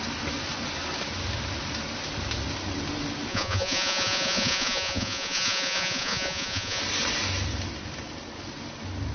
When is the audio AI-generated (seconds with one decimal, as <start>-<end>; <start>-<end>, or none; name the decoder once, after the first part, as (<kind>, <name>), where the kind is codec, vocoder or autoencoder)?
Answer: 3.3-6.8 (vocoder, Vocos)